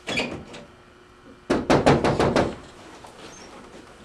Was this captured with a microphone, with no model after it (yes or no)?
yes